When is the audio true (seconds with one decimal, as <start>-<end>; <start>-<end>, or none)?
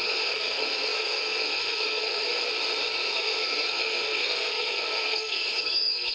2.3-2.9